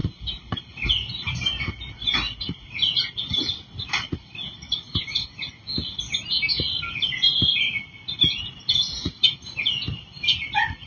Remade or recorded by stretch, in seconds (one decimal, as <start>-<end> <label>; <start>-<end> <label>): 0.0-1.9 remade; 1.9-10.9 recorded